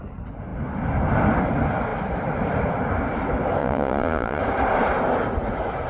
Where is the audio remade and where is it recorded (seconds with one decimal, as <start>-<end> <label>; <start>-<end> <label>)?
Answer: 0.0-3.6 recorded; 3.6-4.4 remade; 4.4-5.9 recorded